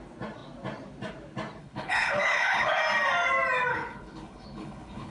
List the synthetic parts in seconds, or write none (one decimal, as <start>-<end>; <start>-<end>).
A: 1.6-2.7; 3.7-5.1